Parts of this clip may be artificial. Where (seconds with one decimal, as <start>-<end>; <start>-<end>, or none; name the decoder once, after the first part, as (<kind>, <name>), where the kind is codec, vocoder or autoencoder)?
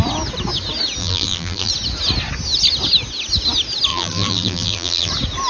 1.0-1.7 (vocoder, BigVGAN v2); 3.9-5.1